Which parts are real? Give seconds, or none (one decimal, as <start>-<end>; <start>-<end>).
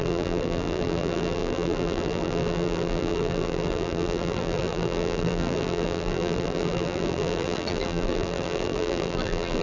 none